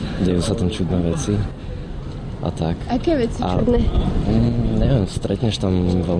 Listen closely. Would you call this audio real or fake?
real